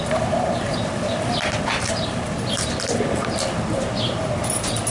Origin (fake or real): real